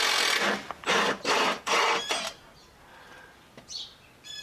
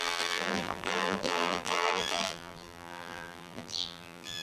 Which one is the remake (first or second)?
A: second